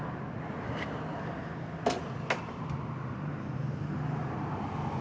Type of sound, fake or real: real